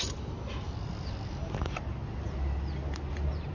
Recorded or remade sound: recorded